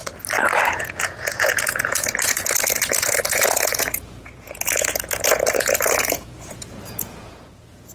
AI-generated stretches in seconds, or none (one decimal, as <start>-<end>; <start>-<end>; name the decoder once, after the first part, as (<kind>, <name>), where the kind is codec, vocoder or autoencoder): 0.8-7.9 (vocoder, Vocos)

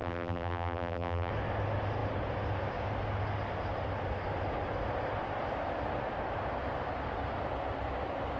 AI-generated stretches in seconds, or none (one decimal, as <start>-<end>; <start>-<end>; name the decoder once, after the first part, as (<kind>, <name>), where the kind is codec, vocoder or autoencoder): 0.0-1.3 (vocoder, BigVGAN v2)

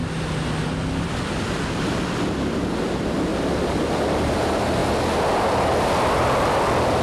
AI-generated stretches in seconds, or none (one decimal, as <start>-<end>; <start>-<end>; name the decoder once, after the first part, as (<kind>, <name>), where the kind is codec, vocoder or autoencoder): none

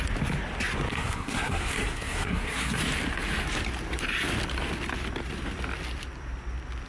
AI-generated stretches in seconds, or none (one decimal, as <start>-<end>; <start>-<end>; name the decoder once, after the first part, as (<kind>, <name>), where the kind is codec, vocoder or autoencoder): 0.9-2.8 (codec, SNAC)

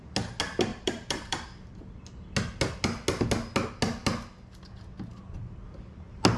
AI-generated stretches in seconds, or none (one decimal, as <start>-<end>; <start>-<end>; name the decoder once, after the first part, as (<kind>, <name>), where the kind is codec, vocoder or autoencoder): 0.7-1.7 (vocoder, BigVGAN v2)

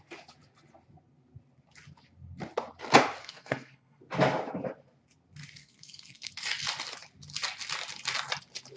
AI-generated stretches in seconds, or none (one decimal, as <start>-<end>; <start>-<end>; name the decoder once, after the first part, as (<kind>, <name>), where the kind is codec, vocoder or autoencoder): 3.2-4.0 (codec, SNAC); 5.6-6.3

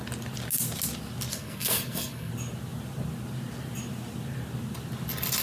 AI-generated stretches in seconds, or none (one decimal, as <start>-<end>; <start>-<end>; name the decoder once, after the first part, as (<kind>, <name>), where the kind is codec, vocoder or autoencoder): 1.3-2.3 (codec, SNAC)